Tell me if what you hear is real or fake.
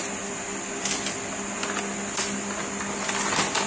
real